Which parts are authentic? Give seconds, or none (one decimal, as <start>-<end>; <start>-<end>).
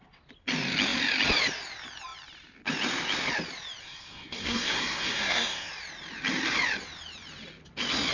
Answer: 0.0-3.8; 5.7-8.1